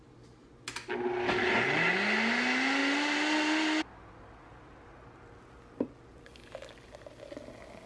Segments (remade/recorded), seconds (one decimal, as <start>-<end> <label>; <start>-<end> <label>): 0.0-7.9 recorded